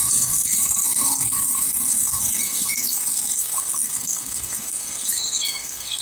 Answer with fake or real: fake